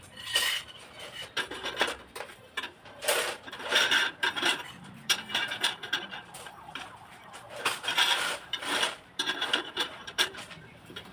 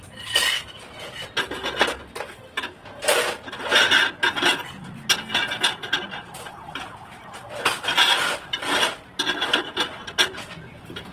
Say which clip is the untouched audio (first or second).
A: second